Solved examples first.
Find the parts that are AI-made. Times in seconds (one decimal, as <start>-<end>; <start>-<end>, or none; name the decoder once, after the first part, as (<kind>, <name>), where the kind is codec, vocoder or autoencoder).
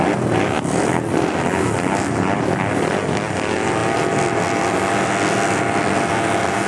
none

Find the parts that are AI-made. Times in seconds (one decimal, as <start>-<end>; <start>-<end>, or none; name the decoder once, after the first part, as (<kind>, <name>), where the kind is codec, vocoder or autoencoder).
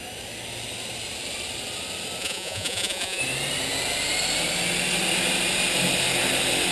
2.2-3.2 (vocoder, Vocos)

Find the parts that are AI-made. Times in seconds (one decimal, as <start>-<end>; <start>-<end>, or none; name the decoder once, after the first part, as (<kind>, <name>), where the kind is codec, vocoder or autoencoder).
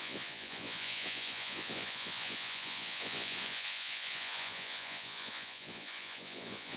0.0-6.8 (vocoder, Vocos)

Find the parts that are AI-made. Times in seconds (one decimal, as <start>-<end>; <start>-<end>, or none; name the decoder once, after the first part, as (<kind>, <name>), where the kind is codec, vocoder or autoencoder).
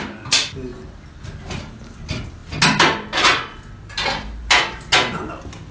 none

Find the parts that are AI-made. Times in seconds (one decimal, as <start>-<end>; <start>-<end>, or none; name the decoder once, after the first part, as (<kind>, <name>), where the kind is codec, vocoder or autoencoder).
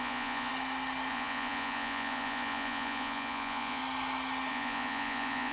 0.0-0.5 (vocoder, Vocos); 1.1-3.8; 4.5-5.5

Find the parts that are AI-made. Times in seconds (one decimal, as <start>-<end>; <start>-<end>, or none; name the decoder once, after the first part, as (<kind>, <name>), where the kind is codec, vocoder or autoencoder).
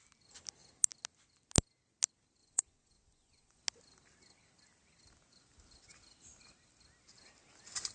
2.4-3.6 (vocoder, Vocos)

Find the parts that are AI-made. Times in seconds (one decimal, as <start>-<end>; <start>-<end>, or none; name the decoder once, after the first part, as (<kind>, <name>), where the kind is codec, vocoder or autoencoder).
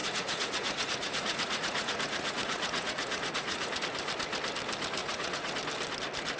0.0-3.8 (vocoder, Vocos); 5.0-5.5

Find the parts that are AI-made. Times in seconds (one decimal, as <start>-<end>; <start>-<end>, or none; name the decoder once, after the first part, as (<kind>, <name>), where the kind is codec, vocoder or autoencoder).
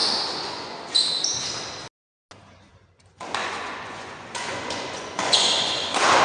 0.0-0.8 (vocoder, Vocos); 3.4-6.2